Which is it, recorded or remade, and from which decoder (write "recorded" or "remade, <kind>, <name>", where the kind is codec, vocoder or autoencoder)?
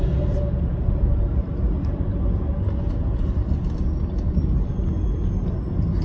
recorded